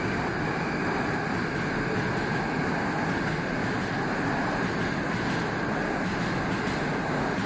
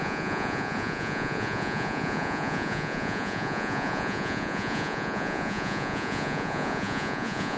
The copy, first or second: second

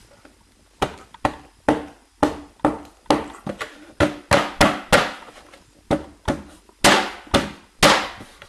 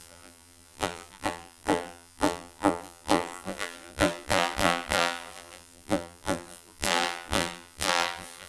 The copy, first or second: second